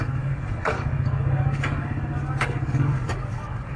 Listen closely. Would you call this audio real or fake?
fake